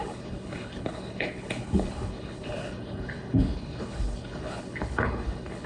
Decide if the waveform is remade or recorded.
remade